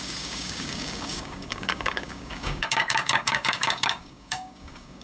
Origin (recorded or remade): remade